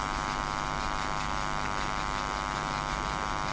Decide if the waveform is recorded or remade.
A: recorded